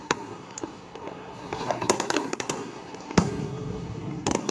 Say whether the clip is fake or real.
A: fake